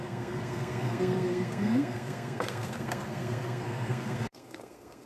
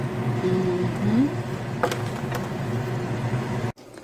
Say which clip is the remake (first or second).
first